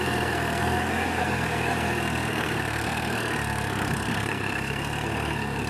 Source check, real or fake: fake